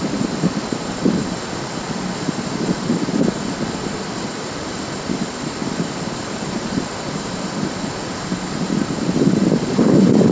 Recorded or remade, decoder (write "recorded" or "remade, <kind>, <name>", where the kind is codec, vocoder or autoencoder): recorded